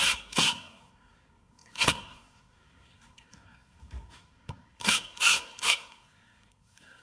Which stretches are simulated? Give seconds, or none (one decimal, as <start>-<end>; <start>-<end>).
0.0-7.0